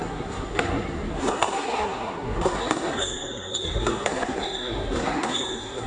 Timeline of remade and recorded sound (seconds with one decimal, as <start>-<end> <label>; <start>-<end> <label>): 0.0-5.9 remade